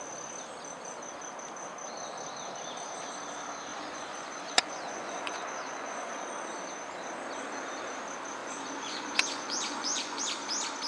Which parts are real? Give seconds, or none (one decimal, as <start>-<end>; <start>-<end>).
0.0-3.7; 6.1-8.4; 10.2-10.9